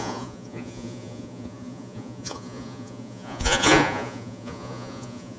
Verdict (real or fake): fake